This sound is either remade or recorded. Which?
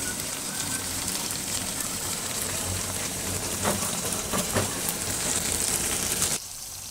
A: remade